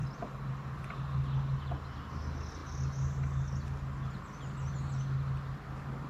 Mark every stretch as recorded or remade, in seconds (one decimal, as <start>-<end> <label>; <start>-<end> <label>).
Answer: 0.0-6.1 recorded